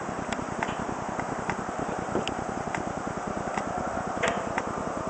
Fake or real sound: real